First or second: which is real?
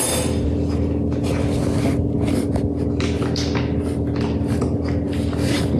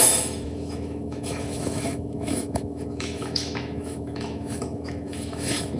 first